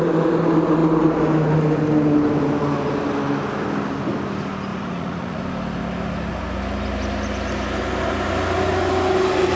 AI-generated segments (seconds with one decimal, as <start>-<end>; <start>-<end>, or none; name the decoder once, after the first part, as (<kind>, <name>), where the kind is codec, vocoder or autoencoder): 4.7-5.4 (vocoder, Vocos)